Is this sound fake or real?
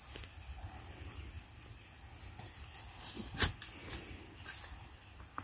real